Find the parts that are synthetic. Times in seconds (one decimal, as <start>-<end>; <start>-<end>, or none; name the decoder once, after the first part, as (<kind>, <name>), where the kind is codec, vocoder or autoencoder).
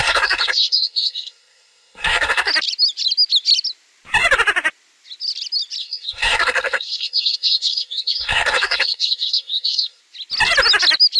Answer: 0.0-2.5 (codec, SNAC); 5.8-10.0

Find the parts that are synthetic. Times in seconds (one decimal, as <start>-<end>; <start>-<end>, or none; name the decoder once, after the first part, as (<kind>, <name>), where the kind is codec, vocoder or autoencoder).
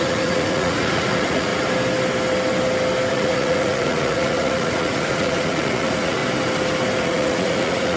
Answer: 0.0-1.5 (vocoder, Vocos); 3.1-6.2; 7.0-8.0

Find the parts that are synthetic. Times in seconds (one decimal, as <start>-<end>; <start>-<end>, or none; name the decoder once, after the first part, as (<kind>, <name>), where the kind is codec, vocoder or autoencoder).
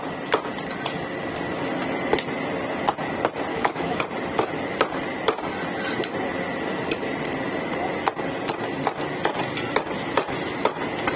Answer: 3.5-4.0 (autoencoder, DAC-VAE)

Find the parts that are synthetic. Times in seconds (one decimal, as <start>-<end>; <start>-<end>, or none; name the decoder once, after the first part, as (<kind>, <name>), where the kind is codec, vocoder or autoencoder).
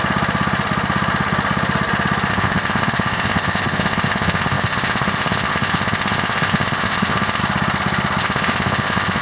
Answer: 2.3-7.4 (codec, ZipCodec); 8.2-9.2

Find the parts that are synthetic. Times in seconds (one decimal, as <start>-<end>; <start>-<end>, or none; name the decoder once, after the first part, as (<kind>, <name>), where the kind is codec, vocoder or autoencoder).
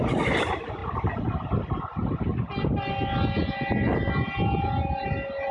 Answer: none